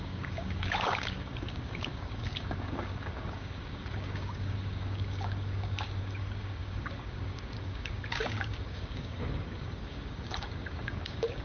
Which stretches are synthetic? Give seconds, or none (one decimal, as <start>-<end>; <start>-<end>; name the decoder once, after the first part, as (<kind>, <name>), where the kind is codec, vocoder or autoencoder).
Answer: 0.0-11.4 (codec, DAC)